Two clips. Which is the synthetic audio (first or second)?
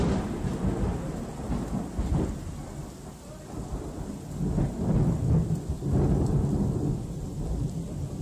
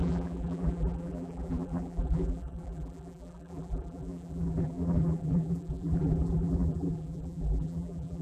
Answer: second